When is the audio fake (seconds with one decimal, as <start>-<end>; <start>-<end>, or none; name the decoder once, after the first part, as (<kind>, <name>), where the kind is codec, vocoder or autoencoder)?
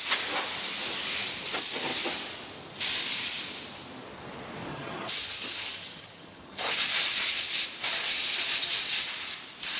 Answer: 4.7-6.7 (vocoder, HiFi-GAN)